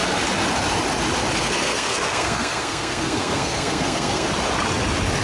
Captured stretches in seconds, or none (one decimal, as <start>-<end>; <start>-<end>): 0.0-1.4; 4.3-5.2

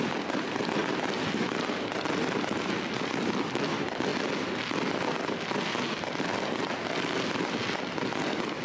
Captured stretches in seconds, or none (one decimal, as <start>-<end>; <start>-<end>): 0.0-8.6

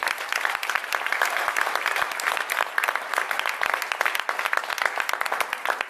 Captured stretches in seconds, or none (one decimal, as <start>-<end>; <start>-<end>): 0.0-5.9

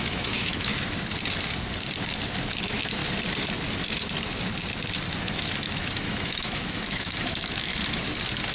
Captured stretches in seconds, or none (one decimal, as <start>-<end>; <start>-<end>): 0.7-2.5; 3.0-5.2; 7.7-8.5

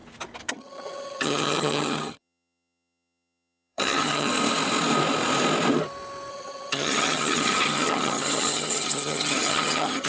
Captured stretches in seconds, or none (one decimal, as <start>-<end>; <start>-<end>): 0.0-0.5; 4.3-6.3

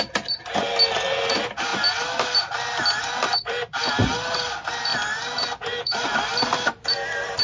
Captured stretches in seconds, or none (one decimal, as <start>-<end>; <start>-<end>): 0.0-7.4

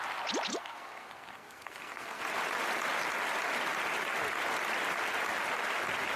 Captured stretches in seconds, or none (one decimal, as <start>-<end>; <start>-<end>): 0.0-0.5; 2.2-6.2